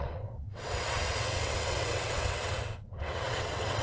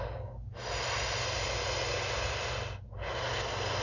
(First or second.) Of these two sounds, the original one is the second